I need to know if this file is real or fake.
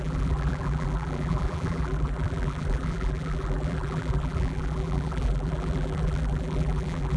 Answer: fake